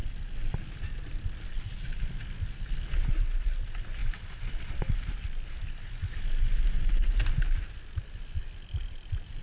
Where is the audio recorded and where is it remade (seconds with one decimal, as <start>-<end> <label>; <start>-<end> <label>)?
0.0-9.4 recorded